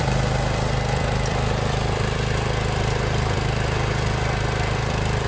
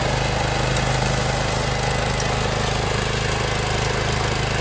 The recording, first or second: second